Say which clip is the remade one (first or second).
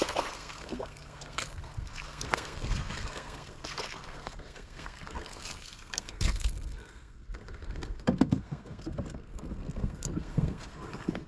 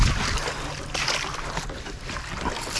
first